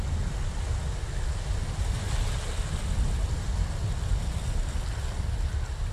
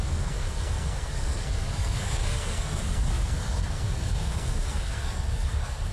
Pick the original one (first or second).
first